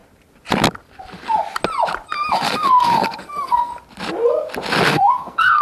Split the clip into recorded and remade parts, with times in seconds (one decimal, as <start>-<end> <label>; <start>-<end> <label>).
0.0-2.3 recorded; 2.3-3.7 remade; 3.7-4.9 recorded; 4.9-5.6 remade